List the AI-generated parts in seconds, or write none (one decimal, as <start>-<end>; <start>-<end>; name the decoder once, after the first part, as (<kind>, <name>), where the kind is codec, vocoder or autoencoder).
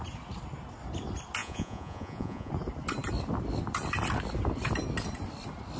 1.4-2.5 (vocoder, Vocos)